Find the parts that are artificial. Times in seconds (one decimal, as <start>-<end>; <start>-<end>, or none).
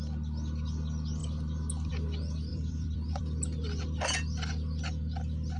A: 2.5-3.2